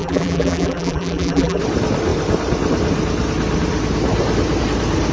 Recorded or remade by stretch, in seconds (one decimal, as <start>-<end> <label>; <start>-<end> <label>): 0.0-1.6 remade; 1.6-5.1 recorded